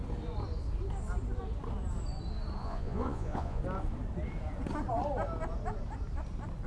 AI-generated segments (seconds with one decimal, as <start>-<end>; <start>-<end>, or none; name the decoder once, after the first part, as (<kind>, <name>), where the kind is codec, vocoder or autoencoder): 2.6-3.6 (vocoder, Vocos)